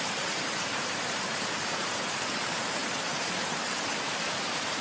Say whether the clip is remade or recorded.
remade